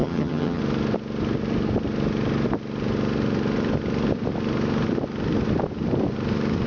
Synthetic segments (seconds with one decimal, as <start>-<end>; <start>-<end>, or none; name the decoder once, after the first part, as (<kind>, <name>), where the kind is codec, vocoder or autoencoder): 0.0-0.6 (vocoder, HiFi-GAN)